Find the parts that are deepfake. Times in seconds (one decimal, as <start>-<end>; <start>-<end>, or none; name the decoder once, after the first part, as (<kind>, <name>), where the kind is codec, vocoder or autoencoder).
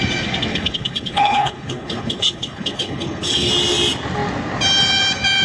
0.5-3.5 (codec, HILCodec)